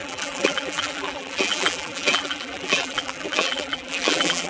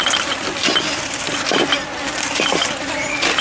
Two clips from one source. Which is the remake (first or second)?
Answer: first